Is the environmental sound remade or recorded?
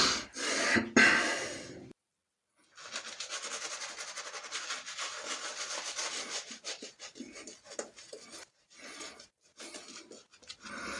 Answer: recorded